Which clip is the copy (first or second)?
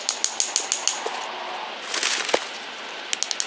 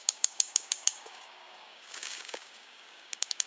second